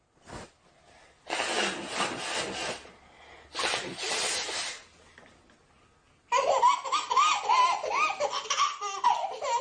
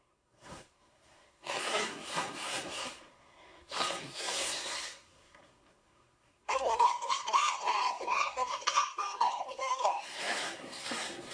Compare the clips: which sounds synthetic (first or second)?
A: second